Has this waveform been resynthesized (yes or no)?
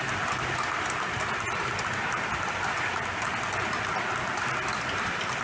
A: no